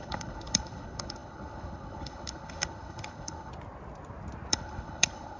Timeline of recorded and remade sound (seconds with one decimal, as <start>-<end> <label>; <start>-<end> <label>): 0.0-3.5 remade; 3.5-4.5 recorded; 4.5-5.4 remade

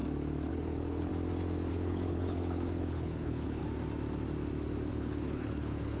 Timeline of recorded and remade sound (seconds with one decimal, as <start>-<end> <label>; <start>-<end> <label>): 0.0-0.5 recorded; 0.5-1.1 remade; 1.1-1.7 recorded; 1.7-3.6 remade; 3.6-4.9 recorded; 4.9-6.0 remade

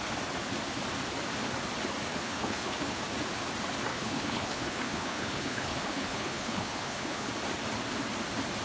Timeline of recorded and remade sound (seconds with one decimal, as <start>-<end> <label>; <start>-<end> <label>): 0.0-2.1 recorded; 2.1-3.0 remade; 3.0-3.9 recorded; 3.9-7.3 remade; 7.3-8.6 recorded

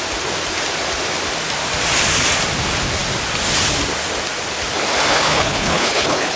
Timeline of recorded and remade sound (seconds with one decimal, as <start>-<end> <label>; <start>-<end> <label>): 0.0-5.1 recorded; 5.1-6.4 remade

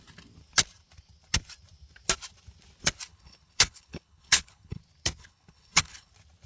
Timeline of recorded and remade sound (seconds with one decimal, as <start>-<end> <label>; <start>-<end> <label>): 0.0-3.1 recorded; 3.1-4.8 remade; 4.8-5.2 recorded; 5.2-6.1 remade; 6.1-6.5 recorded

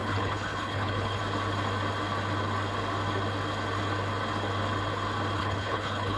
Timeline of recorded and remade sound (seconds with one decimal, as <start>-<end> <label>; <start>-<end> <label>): 0.0-1.2 remade; 1.2-5.4 recorded; 5.4-6.2 remade